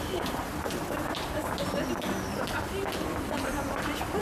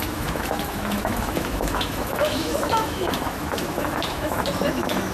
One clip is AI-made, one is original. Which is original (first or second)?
first